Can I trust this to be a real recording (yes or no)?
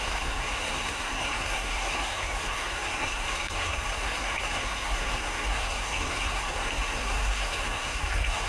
no